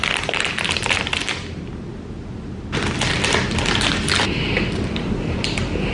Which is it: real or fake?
fake